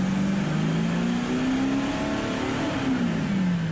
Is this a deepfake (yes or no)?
no